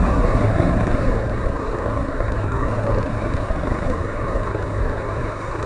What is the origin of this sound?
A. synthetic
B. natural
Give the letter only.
A